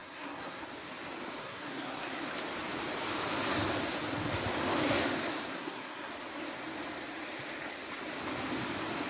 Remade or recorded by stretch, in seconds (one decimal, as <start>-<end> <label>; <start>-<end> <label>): 0.0-0.6 remade; 0.6-1.4 recorded; 1.4-2.2 remade; 2.2-5.5 recorded; 5.5-6.1 remade; 6.1-9.1 recorded